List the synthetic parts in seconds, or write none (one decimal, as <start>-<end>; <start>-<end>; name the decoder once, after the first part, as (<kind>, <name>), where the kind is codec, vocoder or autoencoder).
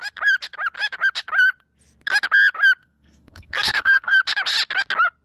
2.8-4.2 (codec, SNAC)